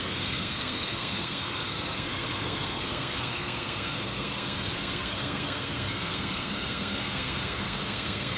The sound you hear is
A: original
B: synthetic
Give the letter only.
B